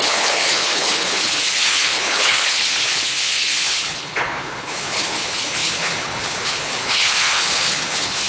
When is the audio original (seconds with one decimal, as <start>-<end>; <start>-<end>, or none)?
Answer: none